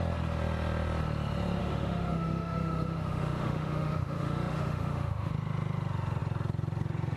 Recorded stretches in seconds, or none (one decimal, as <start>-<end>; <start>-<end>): 0.0-1.6; 5.3-7.2